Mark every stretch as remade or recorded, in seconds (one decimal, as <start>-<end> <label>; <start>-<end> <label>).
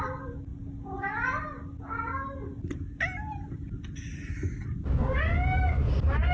0.0-6.3 recorded